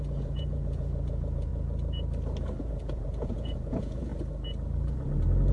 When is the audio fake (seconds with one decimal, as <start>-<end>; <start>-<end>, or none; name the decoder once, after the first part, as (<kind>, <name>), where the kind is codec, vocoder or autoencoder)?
0.0-1.5 (vocoder, Vocos); 2.6-4.1